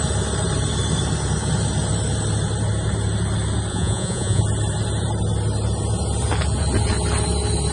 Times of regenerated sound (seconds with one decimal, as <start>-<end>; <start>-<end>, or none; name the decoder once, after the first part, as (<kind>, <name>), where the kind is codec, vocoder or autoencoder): 3.7-4.4 (vocoder, Vocos)

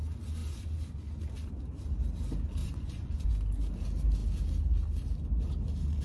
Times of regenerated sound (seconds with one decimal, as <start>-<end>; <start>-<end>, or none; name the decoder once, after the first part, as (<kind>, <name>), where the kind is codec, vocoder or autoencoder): 2.6-3.3 (vocoder, Vocos)

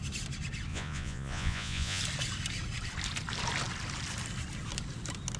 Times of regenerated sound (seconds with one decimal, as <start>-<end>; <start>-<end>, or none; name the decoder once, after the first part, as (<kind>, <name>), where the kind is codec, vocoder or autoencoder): 0.7-2.0 (vocoder, Vocos)

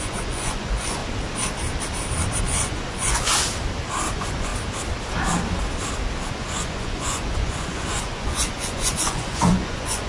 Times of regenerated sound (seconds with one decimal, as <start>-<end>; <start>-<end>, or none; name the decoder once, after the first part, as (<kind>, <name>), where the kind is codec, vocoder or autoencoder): 0.0-1.0 (vocoder, Vocos); 2.4-3.3; 4.1-4.5; 6.3-10.1